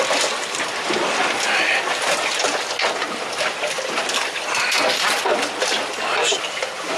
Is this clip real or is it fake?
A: real